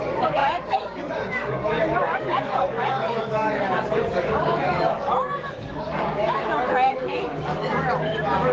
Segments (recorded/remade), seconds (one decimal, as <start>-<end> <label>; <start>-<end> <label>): 0.0-8.5 remade